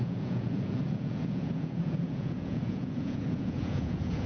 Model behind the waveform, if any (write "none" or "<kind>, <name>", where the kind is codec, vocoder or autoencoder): vocoder, Vocos